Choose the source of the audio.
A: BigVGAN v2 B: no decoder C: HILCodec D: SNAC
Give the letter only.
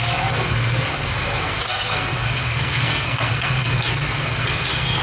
D